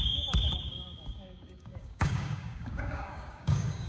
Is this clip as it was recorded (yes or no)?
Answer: no